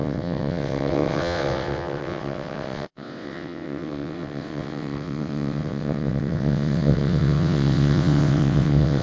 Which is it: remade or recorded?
remade